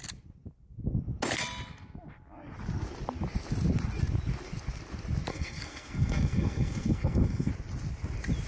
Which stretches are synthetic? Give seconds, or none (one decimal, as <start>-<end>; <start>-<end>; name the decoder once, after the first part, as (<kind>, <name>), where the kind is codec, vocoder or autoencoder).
5.3-7.5 (codec, SNAC)